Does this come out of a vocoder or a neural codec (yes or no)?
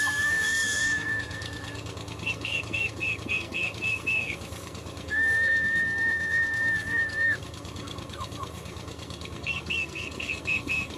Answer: yes